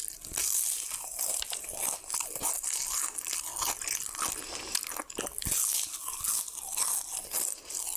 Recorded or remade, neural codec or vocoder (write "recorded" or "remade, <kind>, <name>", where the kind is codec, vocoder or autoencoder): recorded